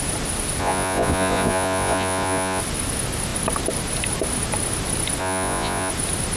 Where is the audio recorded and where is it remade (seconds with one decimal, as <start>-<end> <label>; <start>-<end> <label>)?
0.0-0.6 recorded; 0.6-2.6 remade; 2.6-5.2 recorded; 5.2-5.9 remade; 5.9-6.4 recorded